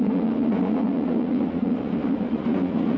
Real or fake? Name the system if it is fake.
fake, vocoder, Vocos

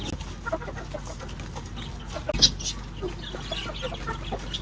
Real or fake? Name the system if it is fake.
real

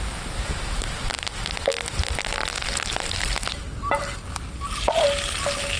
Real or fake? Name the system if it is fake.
real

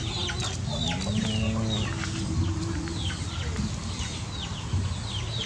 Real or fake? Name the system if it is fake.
real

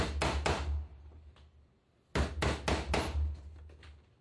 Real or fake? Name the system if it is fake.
real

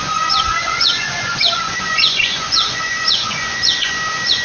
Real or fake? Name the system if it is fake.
fake, vocoder, Vocos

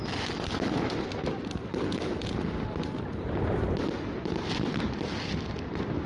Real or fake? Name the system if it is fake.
real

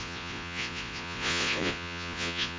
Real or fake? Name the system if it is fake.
fake, vocoder, Vocos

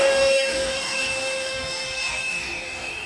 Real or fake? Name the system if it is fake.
fake, codec, DAC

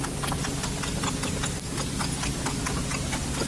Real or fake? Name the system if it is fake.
real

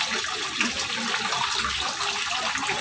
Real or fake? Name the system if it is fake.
real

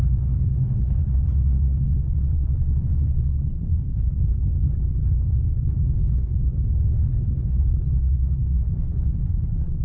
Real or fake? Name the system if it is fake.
fake, codec, HILCodec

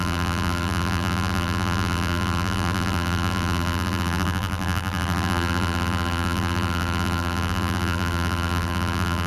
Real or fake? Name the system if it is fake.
fake, vocoder, BigVGAN v2